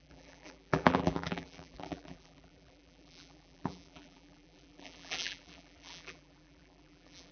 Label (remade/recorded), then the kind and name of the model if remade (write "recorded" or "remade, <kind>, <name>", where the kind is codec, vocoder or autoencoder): remade, vocoder, BigVGAN v2